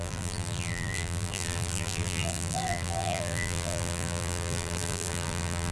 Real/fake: fake